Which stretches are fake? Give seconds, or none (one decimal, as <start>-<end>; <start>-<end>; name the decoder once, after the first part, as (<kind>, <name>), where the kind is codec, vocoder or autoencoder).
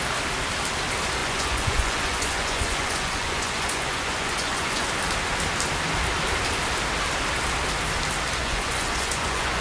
1.2-4.9 (vocoder, Vocos); 8.4-9.6